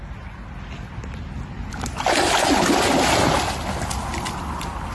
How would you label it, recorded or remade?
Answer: recorded